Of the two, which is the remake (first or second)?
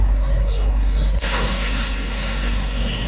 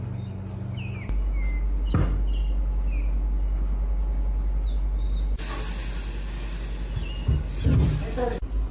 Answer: first